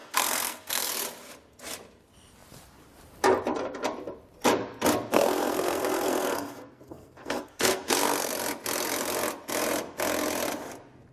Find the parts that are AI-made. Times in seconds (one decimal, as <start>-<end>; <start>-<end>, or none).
0.0-0.9; 5.1-8.3